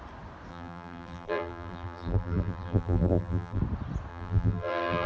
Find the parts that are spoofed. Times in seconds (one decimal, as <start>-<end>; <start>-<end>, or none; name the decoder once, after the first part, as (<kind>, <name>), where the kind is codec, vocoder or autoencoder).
0.5-3.6 (vocoder, BigVGAN v2); 4.1-5.1